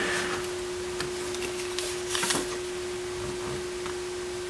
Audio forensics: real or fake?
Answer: real